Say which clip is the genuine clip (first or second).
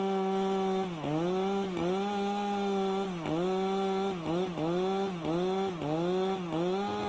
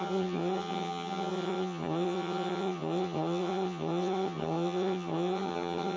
first